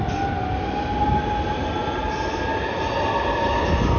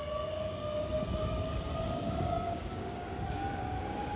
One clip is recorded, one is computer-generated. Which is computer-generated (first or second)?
second